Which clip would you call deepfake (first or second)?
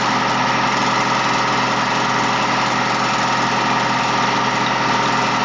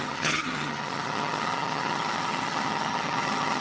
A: second